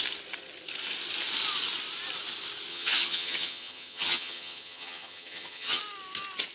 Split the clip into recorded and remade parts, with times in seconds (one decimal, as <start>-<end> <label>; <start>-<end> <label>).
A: 0.0-2.7 recorded; 2.7-5.8 remade; 5.8-6.5 recorded